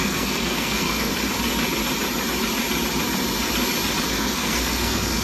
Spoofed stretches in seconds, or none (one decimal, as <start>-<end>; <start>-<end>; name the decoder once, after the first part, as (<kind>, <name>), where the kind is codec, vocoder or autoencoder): 0.0-1.1 (codec, SNAC); 4.1-5.2